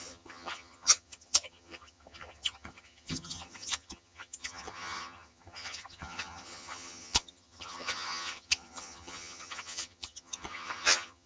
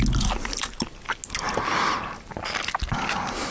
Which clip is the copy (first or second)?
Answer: first